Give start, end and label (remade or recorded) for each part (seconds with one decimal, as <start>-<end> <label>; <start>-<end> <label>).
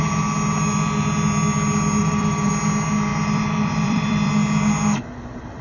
0.0-2.0 recorded; 2.0-2.5 remade; 2.5-3.1 recorded; 3.1-4.3 remade; 4.3-5.6 recorded